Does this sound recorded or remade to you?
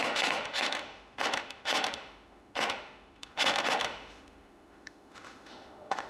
remade